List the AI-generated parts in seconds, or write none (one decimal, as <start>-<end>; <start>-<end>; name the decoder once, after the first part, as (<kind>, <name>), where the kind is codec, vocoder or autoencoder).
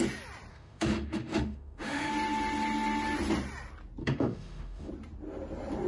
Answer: 0.5-2.1 (autoencoder, DAC-VAE); 4.0-4.9